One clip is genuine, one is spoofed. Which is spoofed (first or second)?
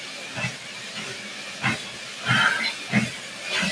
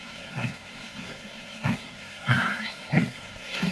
second